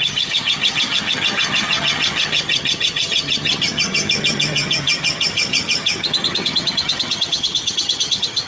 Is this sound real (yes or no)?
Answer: no